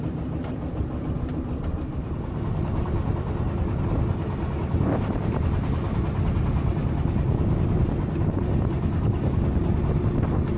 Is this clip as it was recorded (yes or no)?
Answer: yes